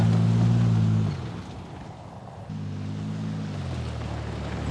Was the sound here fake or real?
real